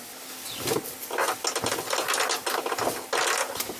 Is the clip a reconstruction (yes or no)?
no